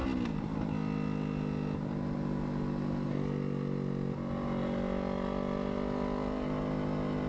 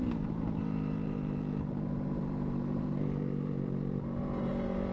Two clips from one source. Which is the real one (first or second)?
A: first